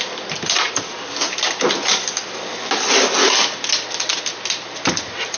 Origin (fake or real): real